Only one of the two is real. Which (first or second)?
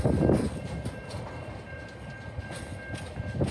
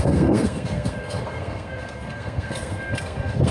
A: first